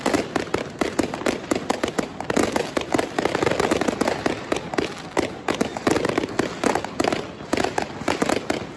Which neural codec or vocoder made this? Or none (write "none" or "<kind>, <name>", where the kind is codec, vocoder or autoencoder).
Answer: none